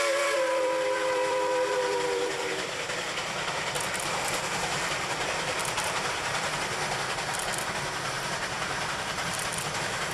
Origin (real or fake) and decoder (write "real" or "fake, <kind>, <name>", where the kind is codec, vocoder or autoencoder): fake, vocoder, BigVGAN v2